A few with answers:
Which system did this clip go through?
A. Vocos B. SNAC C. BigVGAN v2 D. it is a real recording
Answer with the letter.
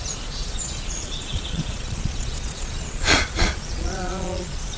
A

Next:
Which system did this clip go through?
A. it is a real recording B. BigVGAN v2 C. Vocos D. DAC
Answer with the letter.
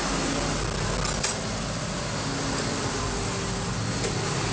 A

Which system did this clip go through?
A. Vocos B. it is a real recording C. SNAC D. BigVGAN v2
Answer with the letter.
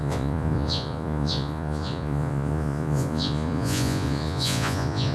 A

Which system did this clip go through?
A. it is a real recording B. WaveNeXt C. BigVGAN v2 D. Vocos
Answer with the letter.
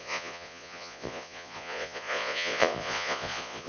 D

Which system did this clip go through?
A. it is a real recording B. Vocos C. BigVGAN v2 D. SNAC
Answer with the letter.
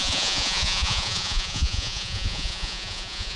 B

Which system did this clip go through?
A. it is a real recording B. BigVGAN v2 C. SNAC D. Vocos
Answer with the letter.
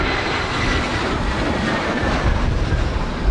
A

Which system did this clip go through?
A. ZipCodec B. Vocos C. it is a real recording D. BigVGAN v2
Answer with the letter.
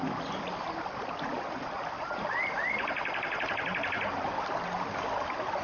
C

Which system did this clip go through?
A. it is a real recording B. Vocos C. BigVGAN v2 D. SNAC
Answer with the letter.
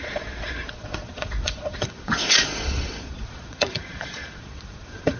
B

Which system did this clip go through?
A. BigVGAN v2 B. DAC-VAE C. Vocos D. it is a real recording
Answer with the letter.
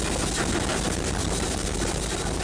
D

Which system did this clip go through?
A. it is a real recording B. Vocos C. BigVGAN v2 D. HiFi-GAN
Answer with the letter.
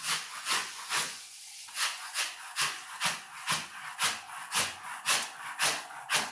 B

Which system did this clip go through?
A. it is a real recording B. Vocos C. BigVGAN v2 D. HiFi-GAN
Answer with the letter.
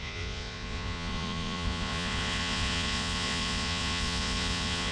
B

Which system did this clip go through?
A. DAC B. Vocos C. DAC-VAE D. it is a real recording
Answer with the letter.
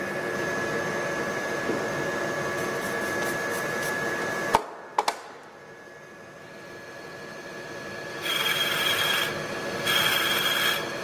D